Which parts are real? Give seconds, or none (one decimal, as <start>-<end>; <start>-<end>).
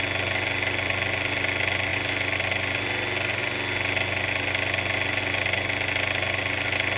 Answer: 0.0-7.0